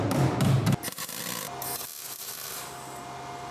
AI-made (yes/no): no